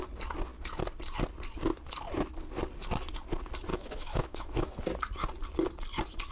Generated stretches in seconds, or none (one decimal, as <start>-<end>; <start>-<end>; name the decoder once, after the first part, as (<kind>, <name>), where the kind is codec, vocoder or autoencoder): 3.7-4.7 (autoencoder, DAC-VAE)